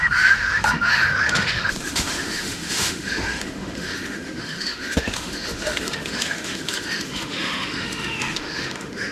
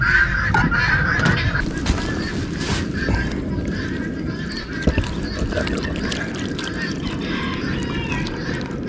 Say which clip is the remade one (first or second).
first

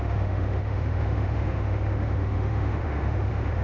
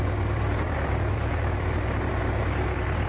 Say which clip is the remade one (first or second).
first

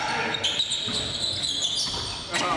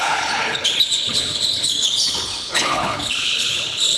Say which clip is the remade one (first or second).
second